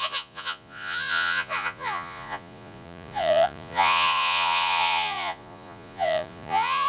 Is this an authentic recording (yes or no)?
no